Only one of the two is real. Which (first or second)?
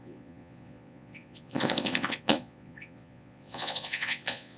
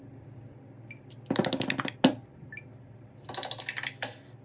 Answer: second